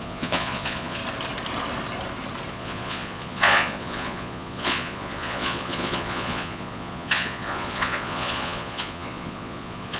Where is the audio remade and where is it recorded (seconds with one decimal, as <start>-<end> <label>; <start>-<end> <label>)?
0.0-1.0 remade; 1.0-2.5 recorded; 2.5-10.0 remade